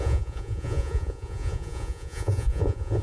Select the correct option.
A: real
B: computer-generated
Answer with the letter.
B